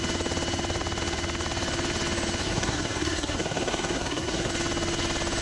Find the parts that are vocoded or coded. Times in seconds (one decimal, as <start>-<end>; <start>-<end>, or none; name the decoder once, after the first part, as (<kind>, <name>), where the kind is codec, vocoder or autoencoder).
2.4-4.5 (codec, SNAC)

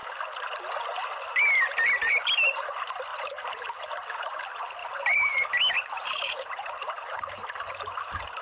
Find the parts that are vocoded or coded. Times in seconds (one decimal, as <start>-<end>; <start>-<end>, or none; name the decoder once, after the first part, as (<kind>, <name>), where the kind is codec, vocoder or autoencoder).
none

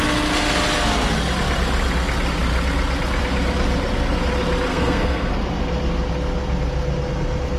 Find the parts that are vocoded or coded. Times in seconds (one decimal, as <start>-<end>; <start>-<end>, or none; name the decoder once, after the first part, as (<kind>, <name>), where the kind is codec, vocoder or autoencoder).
4.7-5.3 (codec, SNAC)